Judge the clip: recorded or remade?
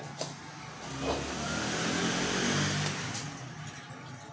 recorded